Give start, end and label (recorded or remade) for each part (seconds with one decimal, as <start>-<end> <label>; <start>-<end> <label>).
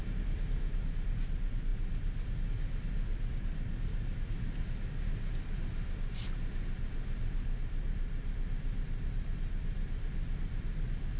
0.0-11.2 recorded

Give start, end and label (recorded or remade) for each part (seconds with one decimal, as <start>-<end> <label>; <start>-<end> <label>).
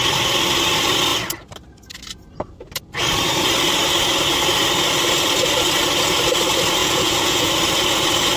0.0-6.8 recorded; 6.8-7.5 remade; 7.5-8.4 recorded